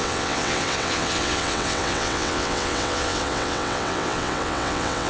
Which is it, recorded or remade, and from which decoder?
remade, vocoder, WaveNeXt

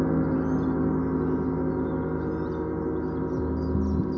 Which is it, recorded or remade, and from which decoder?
recorded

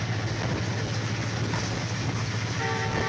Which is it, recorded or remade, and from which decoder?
recorded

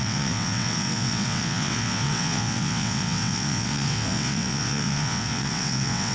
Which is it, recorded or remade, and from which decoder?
remade, vocoder, WaveNeXt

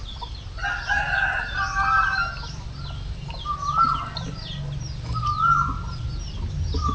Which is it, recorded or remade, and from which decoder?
recorded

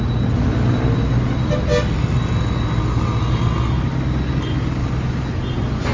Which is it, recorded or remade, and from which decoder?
recorded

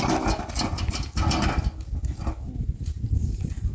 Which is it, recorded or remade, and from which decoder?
recorded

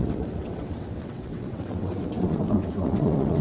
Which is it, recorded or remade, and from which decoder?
remade, vocoder, WaveNeXt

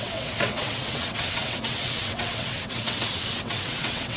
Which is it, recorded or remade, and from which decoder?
remade, vocoder, WaveNeXt